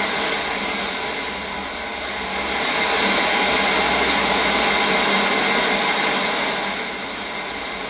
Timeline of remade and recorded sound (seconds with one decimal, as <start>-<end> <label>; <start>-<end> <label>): 0.0-7.9 recorded